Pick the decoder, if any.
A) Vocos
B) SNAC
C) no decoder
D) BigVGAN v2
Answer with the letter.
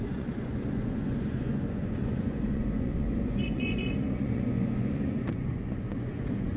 A